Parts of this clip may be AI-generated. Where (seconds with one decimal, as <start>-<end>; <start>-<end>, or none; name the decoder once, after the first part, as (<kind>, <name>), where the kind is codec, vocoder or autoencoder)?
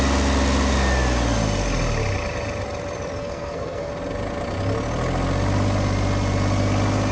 3.2-3.9 (codec, SNAC)